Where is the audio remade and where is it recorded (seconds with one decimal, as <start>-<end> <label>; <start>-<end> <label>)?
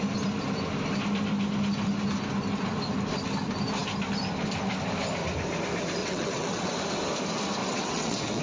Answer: 0.0-6.0 recorded; 6.0-6.7 remade; 6.7-7.6 recorded; 7.6-8.4 remade